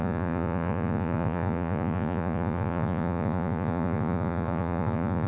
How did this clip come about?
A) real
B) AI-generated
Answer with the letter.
B